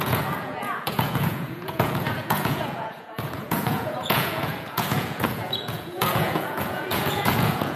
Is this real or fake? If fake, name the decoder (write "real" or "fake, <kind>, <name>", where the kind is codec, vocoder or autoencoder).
fake, vocoder, Vocos